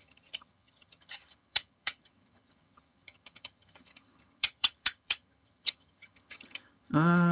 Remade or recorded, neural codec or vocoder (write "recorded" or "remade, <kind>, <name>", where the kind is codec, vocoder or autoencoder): remade, vocoder, HiFi-GAN